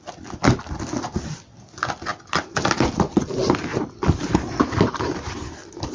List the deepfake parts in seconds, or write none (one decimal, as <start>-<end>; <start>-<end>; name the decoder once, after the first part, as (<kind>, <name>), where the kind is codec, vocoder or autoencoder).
none